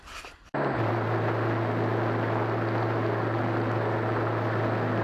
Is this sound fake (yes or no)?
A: no